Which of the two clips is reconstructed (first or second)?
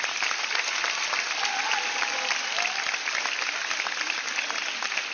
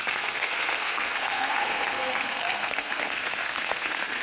second